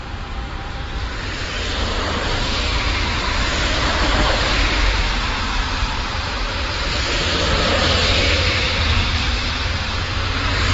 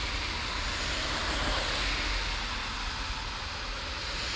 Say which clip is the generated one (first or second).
first